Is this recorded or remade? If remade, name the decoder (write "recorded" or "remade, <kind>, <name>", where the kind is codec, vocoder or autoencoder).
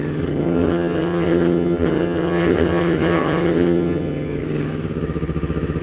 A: remade, vocoder, HiFi-GAN